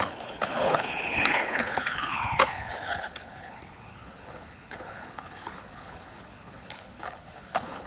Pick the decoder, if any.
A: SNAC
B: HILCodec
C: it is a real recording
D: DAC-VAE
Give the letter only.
B